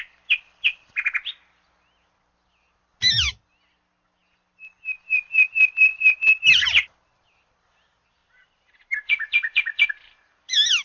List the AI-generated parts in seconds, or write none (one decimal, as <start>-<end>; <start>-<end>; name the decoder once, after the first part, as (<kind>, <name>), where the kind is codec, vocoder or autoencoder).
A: 5.9-7.4 (vocoder, BigVGAN v2); 8.2-9.9